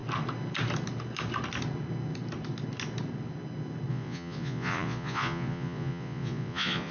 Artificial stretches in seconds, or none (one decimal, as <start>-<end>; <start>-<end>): 3.9-6.9

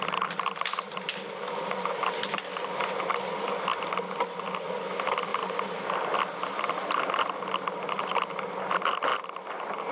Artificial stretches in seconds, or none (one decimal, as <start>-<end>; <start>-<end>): none